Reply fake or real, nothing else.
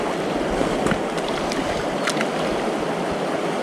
real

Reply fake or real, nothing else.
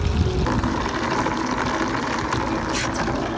real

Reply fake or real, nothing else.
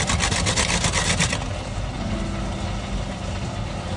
real